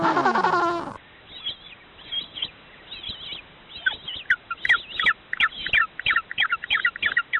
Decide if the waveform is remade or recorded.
recorded